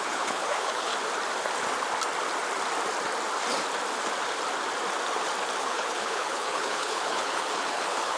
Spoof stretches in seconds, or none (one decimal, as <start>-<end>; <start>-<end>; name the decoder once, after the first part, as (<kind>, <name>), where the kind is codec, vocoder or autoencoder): 0.0-0.9 (codec, HILCodec); 5.6-8.2